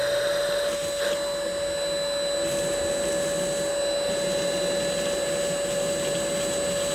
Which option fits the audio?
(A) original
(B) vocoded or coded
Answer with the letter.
A